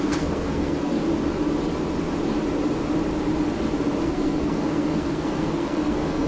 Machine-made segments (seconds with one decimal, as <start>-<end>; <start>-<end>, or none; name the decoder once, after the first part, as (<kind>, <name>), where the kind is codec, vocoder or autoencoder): 0.0-1.0 (codec, SNAC); 4.0-6.3

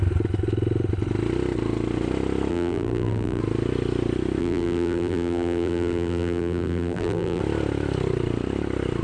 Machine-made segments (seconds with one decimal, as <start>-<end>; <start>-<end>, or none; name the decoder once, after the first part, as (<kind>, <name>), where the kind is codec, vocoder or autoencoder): 2.5-3.4 (vocoder, BigVGAN v2); 4.4-7.4

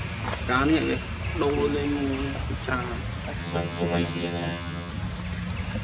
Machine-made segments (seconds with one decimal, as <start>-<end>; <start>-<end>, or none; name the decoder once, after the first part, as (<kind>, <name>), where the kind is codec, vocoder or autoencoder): 3.4-4.9 (vocoder, HiFi-GAN)

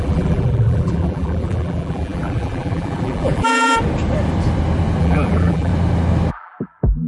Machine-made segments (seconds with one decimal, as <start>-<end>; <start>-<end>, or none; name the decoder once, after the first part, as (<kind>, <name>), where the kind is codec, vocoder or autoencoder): 0.0-3.7 (vocoder, BigVGAN v2); 5.0-5.7; 6.3-7.1

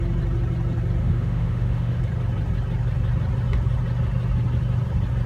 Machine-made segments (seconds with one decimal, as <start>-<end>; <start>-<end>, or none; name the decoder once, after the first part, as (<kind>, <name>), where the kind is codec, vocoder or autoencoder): 1.0-2.0 (autoencoder, DAC-VAE)